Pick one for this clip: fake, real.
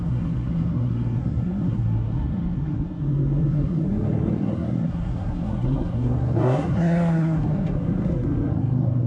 fake